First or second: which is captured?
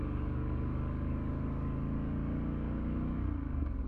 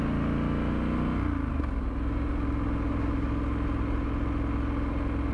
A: second